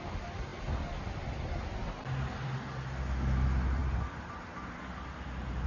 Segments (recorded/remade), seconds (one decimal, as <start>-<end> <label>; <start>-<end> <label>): 0.0-5.7 recorded